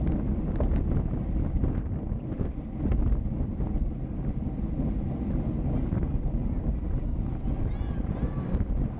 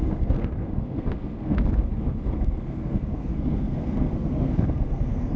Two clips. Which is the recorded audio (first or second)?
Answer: first